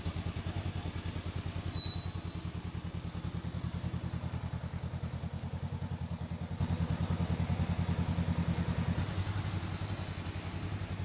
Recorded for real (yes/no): yes